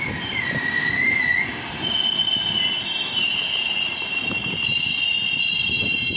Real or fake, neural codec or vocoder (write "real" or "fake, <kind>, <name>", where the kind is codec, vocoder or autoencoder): real